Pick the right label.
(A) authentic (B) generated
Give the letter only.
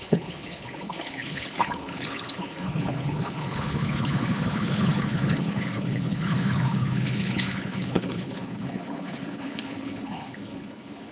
B